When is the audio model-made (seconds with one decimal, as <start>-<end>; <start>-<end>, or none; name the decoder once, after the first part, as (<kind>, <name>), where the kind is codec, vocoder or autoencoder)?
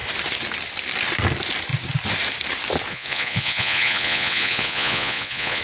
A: 2.9-5.6 (vocoder, Vocos)